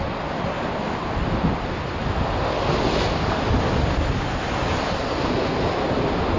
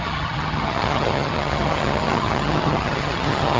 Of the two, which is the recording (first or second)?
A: first